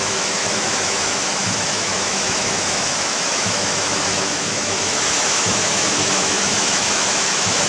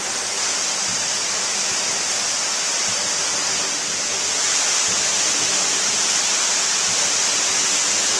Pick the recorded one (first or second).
second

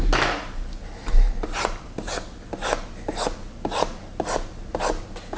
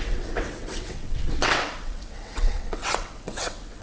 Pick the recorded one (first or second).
first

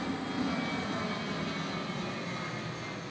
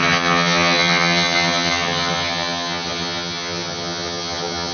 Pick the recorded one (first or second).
first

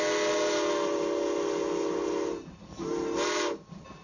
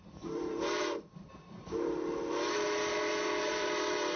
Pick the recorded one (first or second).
first